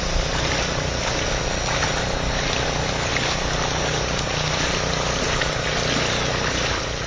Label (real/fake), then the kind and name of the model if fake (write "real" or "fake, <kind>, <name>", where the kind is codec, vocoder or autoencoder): real